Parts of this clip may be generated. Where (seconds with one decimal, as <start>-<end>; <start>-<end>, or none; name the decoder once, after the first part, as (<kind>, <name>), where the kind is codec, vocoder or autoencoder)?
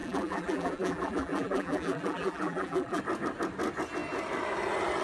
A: 0.0-3.0 (vocoder, BigVGAN v2)